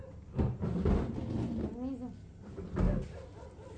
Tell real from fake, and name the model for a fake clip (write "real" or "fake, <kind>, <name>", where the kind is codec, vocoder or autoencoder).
real